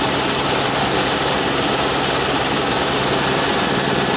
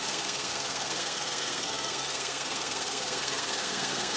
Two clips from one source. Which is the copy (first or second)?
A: second